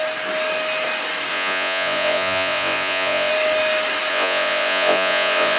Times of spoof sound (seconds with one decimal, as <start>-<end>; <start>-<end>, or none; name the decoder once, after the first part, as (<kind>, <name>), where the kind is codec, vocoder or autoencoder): 1.3-3.3 (vocoder, Vocos); 4.1-5.6